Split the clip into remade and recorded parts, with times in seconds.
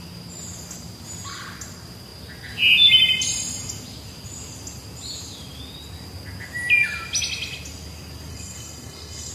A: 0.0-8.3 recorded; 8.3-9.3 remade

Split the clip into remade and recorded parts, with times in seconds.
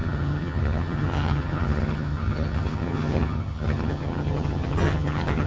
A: 0.0-5.5 remade